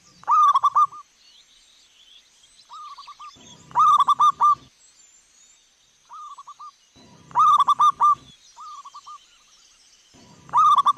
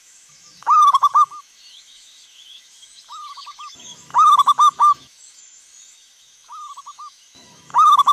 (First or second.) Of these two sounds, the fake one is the second